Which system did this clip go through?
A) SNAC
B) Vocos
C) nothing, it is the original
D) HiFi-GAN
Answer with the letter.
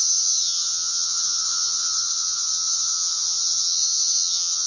D